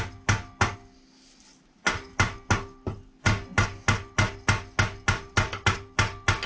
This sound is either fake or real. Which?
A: real